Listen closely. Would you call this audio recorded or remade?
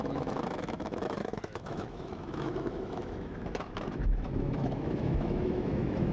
remade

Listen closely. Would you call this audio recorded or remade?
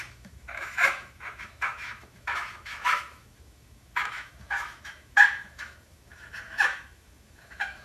remade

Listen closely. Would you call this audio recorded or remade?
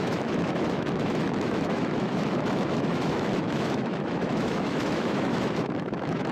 remade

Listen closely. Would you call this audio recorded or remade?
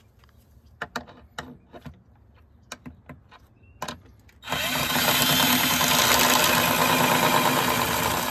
recorded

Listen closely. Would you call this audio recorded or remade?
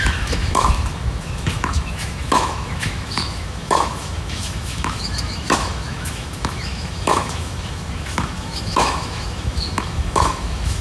remade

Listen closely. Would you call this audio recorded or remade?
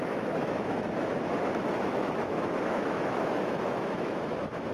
remade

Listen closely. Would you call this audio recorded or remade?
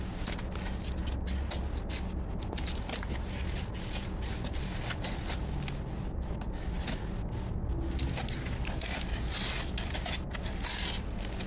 recorded